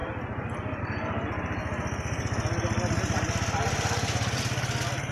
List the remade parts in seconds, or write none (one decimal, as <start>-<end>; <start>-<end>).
0.8-1.6